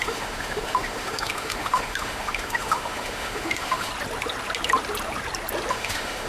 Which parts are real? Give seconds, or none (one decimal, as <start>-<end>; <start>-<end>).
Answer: 3.9-5.7